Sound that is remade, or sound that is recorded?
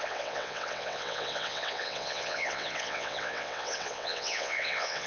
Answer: remade